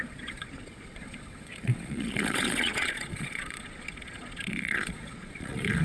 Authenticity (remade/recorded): remade